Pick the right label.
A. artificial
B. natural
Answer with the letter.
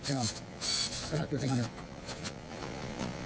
A